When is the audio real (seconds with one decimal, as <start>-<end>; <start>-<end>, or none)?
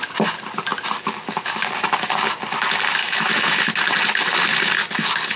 0.0-3.0; 3.7-5.4